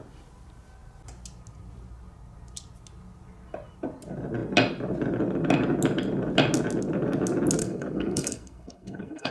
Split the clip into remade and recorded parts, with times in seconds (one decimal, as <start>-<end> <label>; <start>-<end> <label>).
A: 0.0-7.6 recorded; 7.6-9.3 remade